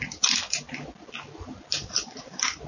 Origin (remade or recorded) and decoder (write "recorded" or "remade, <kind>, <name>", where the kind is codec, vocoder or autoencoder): recorded